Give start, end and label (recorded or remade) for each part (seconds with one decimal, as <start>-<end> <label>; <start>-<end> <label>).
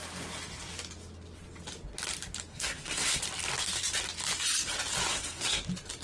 0.0-2.5 recorded; 2.5-3.2 remade; 3.2-5.1 recorded; 5.1-5.6 remade; 5.6-6.0 recorded